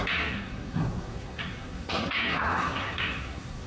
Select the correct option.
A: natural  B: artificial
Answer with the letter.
B